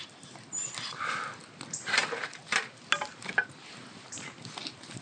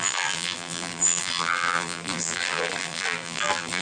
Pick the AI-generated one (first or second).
second